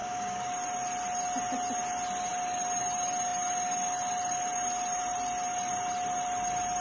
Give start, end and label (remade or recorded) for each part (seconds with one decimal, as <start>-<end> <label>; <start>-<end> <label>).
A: 0.0-0.5 remade; 0.5-6.8 recorded